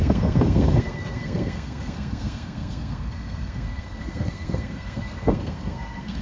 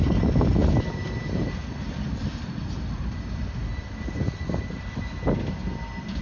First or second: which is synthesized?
first